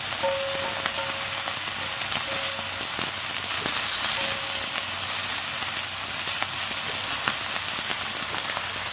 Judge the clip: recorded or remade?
recorded